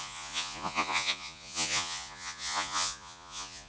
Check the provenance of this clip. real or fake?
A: fake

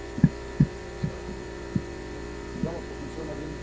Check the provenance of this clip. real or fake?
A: fake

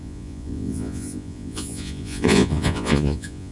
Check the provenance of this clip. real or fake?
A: fake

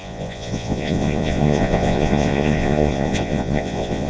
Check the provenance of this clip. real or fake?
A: fake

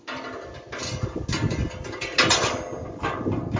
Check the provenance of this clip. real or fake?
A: real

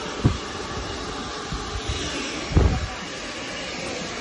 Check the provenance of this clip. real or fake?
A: real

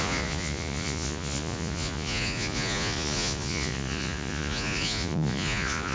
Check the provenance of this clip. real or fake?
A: fake